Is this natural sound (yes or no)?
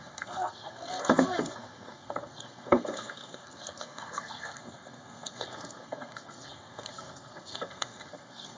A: no